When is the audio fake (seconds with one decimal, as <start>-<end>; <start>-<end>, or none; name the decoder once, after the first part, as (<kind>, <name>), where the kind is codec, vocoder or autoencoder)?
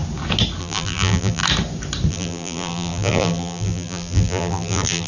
0.6-1.4 (vocoder, BigVGAN v2); 2.1-5.1